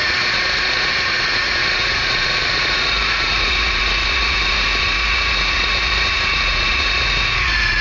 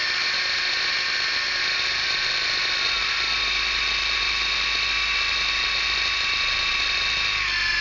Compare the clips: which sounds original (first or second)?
second